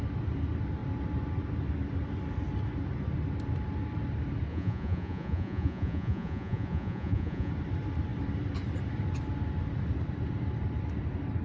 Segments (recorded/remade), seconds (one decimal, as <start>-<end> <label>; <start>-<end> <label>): 0.0-4.5 recorded; 4.5-7.5 remade; 7.5-11.4 recorded